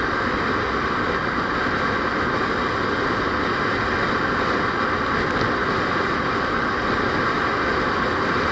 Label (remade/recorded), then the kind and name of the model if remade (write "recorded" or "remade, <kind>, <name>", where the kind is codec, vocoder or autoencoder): recorded